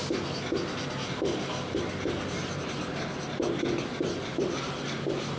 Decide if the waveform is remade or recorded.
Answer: recorded